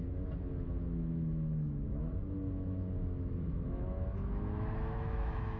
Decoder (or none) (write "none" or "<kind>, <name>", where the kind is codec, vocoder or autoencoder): autoencoder, DAC-VAE